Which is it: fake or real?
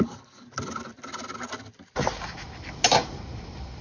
real